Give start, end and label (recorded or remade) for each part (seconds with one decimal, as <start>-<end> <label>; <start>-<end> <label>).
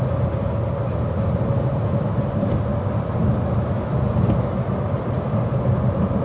0.0-6.2 recorded